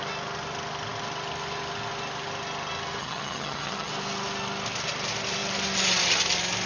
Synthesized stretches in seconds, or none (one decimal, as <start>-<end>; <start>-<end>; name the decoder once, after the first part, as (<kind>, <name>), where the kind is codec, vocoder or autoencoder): 3.0-3.9 (vocoder, HiFi-GAN)